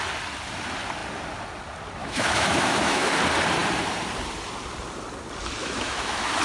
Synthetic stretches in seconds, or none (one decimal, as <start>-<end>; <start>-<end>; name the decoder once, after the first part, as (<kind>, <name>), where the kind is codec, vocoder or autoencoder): 2.0-3.1 (autoencoder, DAC-VAE); 5.6-6.4

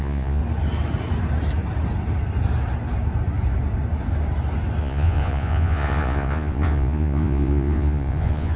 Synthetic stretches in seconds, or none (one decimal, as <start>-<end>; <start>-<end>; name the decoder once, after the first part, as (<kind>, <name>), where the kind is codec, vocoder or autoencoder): 0.0-0.4 (vocoder, Vocos); 4.8-8.6

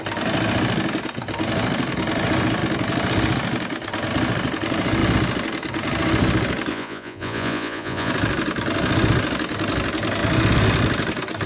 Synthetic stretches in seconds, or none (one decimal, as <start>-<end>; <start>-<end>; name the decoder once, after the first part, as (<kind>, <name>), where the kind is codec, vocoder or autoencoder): 6.7-8.1 (vocoder, Vocos)

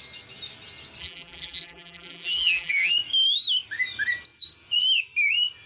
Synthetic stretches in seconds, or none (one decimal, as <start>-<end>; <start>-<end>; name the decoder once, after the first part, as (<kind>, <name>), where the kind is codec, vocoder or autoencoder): 1.0-2.9 (vocoder, BigVGAN v2)

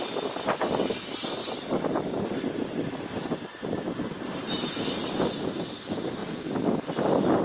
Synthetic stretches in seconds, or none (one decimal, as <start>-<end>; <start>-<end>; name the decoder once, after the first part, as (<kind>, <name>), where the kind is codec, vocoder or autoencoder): none

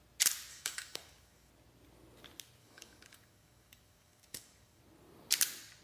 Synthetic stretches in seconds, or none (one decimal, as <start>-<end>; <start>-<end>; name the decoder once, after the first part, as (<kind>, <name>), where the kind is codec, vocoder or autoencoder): 0.5-1.5 (codec, DAC); 2.6-4.8